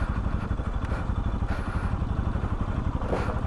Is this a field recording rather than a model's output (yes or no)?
no